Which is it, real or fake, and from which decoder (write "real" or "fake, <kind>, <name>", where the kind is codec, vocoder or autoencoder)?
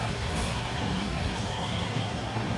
fake, codec, SNAC